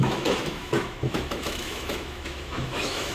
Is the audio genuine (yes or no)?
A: no